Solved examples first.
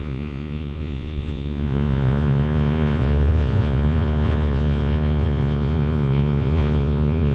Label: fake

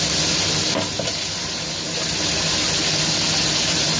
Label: real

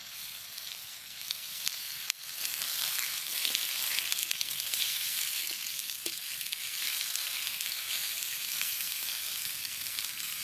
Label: fake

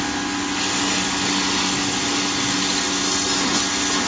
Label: real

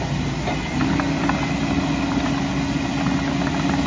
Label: real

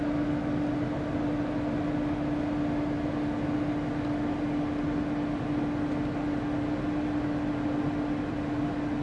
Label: real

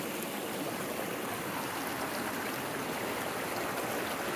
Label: real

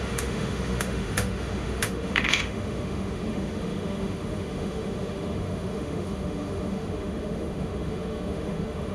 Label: fake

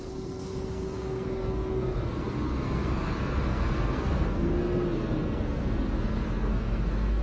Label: fake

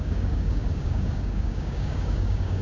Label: fake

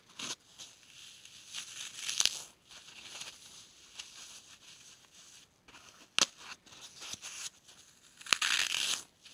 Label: real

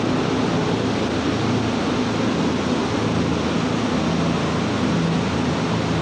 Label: real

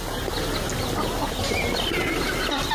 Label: real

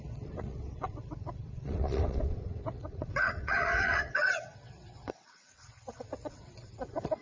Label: fake